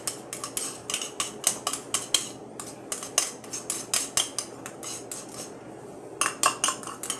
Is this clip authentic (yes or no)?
yes